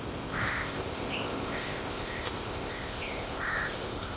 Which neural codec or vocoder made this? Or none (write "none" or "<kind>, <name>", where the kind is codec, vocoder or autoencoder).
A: codec, ZipCodec